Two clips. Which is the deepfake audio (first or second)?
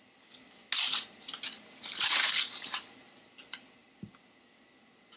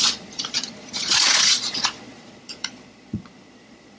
second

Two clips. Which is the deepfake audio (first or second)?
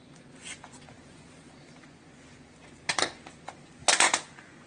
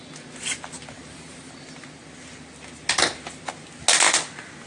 first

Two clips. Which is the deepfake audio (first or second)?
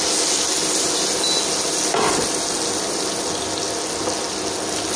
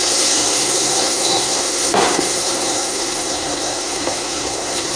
second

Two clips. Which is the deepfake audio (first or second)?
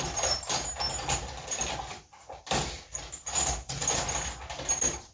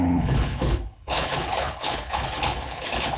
second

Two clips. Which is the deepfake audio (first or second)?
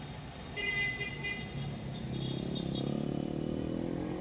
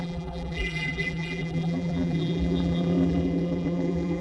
second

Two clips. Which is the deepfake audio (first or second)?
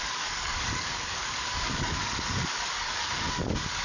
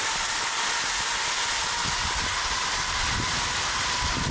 first